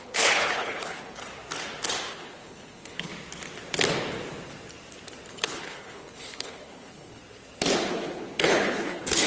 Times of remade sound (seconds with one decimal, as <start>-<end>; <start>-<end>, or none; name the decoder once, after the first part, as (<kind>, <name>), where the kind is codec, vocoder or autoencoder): 0.0-1.2 (codec, HILCodec); 2.1-3.1; 5.3-7.2; 7.9-9.3